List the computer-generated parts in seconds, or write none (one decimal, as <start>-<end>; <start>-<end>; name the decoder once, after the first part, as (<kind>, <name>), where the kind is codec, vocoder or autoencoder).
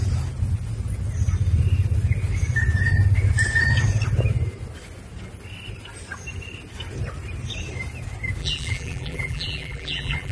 8.4-10.3 (vocoder, BigVGAN v2)